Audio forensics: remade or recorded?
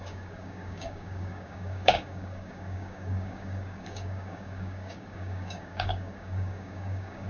remade